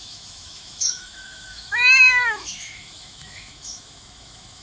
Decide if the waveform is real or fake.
fake